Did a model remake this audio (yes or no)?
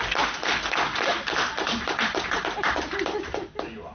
no